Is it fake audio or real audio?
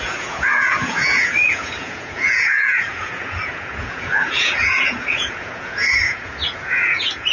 fake